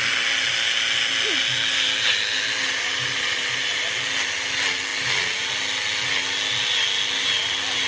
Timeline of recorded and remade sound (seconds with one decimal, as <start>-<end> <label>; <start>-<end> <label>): 0.0-7.9 recorded